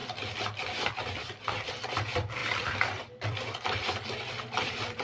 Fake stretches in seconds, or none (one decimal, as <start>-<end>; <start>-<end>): 0.0-0.7; 2.4-5.0